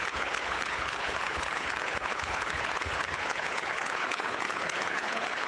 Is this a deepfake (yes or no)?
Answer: yes